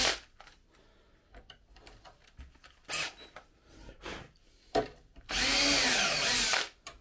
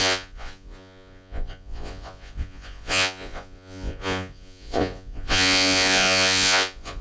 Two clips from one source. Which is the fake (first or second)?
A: second